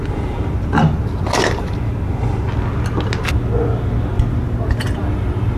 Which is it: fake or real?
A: real